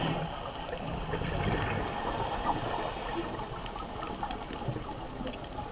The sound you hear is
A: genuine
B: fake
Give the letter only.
A